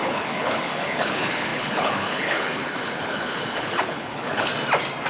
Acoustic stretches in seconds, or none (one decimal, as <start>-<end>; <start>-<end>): 4.5-5.1